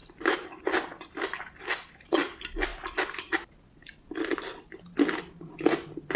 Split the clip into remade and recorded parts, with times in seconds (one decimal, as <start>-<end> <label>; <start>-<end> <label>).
0.0-0.6 remade; 0.6-6.2 recorded